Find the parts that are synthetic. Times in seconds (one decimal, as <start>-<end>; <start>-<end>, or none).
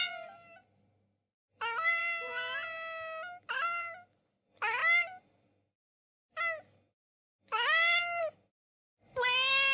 none